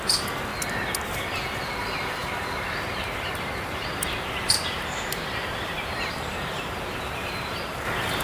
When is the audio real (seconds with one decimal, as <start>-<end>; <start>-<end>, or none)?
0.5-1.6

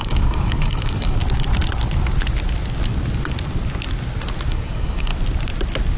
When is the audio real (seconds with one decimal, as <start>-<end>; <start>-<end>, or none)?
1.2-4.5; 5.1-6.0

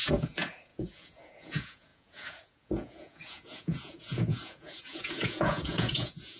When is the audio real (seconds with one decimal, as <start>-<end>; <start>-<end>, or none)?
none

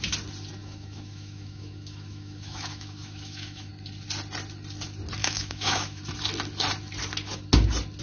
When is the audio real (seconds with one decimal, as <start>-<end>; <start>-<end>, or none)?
0.0-0.6; 3.7-5.2; 6.0-8.0